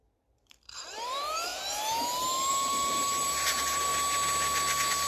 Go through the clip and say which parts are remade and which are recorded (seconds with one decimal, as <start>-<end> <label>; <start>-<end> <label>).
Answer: 0.0-1.5 remade; 1.5-2.5 recorded; 2.5-3.9 remade; 3.9-5.1 recorded